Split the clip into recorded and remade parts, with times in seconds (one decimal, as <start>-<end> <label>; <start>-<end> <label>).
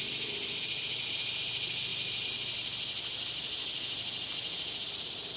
0.0-5.4 recorded